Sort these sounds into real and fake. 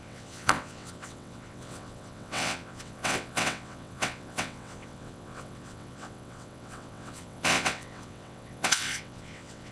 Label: fake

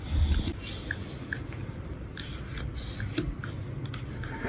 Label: real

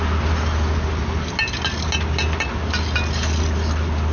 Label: real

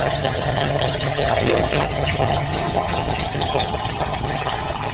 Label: fake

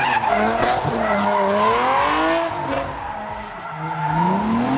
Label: real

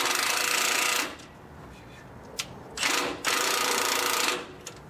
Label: real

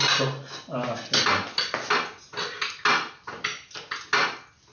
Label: real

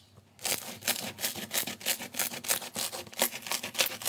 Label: real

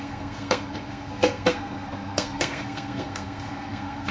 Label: fake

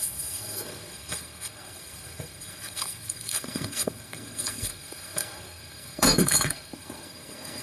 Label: fake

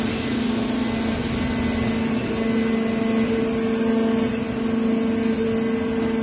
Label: real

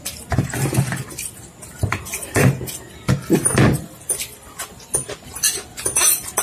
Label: real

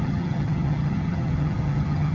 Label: fake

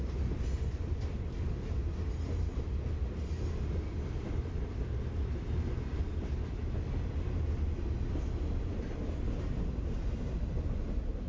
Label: real